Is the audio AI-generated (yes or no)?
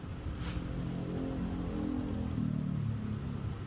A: no